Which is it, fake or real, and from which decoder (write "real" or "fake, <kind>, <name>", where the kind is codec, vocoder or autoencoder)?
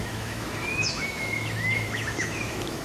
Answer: fake, autoencoder, DAC-VAE